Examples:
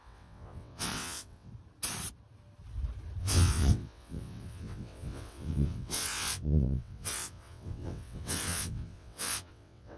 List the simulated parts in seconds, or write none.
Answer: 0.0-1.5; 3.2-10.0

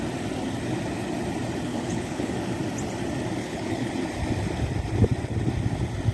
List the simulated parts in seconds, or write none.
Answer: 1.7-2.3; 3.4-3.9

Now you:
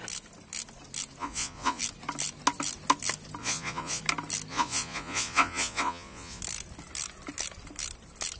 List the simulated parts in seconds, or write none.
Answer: 1.2-1.8; 3.4-4.0; 4.5-6.4